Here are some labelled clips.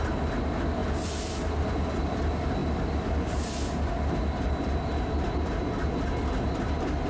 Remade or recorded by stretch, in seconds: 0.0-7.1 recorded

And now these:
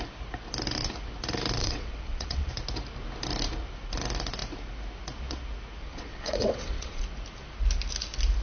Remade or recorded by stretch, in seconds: 0.0-1.6 recorded; 1.6-2.5 remade; 2.5-5.8 recorded; 5.8-7.0 remade; 7.0-8.4 recorded

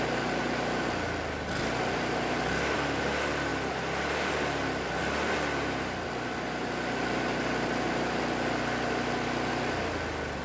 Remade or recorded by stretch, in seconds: 0.0-10.4 recorded